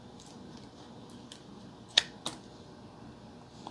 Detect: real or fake real